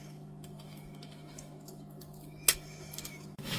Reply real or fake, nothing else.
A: fake